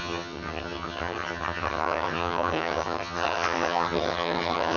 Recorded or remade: remade